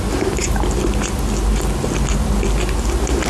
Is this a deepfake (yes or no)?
no